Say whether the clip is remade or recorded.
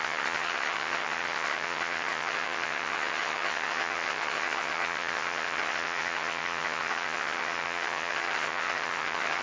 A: remade